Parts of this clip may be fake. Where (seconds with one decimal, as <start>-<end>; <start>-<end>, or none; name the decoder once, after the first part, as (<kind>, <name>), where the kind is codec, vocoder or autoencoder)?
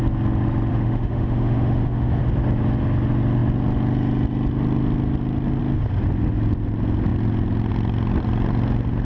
0.7-2.2 (autoencoder, DAC-VAE)